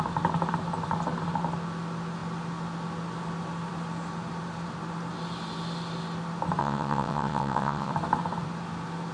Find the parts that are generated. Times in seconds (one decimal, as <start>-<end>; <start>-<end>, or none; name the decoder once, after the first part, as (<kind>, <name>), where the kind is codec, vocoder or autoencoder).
6.6-7.9 (vocoder, WaveNeXt)